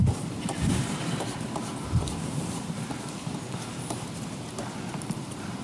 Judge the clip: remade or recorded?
remade